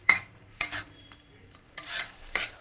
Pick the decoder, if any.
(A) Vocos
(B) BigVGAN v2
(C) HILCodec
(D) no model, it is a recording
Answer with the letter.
B